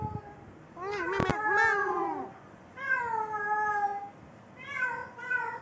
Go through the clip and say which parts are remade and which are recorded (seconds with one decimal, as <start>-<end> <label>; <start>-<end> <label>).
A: 0.0-1.8 recorded; 1.8-3.0 remade; 3.0-5.0 recorded; 5.0-5.6 remade